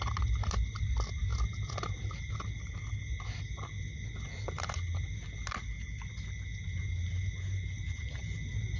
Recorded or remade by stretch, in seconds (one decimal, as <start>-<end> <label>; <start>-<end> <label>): 0.0-8.8 recorded